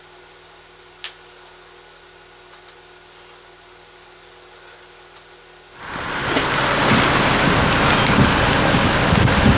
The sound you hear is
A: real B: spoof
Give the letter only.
A